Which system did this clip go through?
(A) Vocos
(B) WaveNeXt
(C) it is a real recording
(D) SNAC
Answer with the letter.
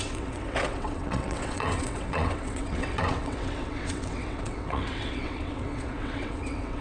B